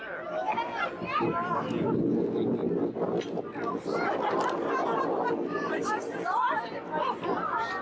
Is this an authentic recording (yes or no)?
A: yes